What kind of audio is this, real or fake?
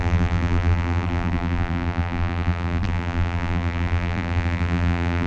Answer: fake